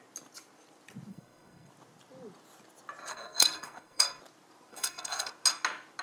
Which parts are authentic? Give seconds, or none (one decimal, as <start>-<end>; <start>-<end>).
0.0-1.1; 1.7-3.1; 4.2-4.7; 5.3-6.0